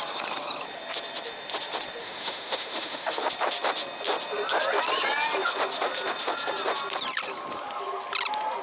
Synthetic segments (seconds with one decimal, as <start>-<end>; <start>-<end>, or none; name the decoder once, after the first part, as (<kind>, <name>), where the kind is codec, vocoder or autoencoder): 2.0-3.2 (autoencoder, DAC-VAE)